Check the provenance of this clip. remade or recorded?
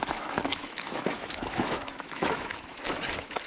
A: remade